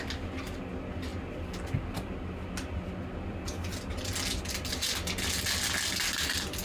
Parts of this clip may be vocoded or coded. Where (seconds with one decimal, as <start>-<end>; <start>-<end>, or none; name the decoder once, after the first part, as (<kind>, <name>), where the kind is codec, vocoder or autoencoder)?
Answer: none

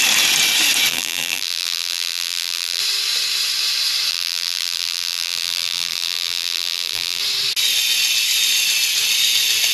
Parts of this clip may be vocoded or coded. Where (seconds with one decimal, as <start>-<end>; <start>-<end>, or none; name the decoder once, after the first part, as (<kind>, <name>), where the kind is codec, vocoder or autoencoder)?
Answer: 0.9-2.8 (vocoder, BigVGAN v2); 4.1-7.2